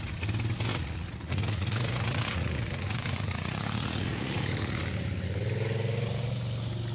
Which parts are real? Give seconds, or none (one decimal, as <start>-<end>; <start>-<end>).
0.0-0.7; 4.8-6.9